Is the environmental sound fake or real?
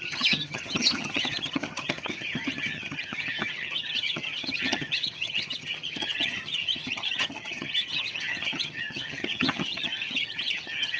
fake